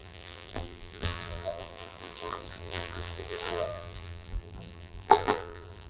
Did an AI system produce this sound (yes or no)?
yes